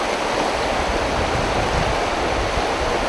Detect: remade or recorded recorded